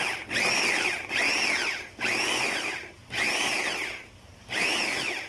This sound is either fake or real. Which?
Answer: real